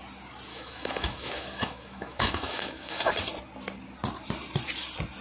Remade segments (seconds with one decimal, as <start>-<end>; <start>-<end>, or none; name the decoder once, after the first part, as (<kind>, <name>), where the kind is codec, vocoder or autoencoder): 0.5-3.1 (autoencoder, DAC-VAE)